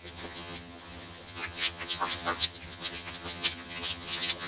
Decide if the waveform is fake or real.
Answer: fake